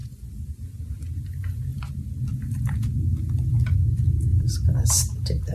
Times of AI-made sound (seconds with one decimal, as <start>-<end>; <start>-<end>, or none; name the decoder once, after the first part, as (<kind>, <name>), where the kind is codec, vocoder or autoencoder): 0.0-0.8 (vocoder, BigVGAN v2); 1.7-3.7; 4.3-4.9